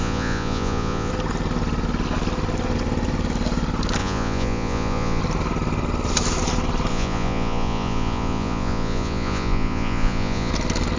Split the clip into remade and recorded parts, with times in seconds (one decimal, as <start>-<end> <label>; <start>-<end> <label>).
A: 0.0-1.1 remade; 1.1-4.0 recorded; 4.0-5.2 remade; 5.2-6.9 recorded; 6.9-10.5 remade; 10.5-11.0 recorded